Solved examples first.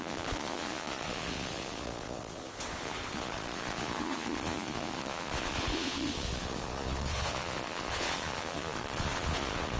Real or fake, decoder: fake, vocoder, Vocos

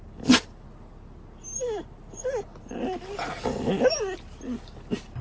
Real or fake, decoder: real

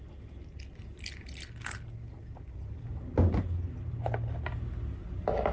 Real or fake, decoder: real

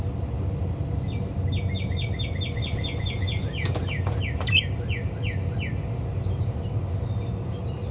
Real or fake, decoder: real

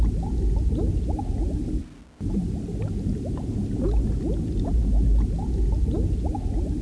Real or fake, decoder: real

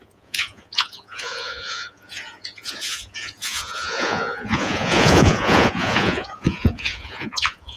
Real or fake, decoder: fake, vocoder, Vocos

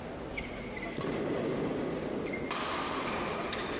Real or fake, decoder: real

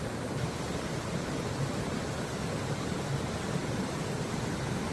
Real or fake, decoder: real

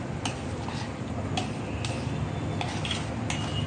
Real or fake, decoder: real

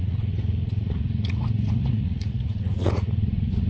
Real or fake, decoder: fake, vocoder, Vocos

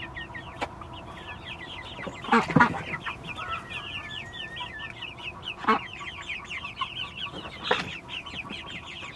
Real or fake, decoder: real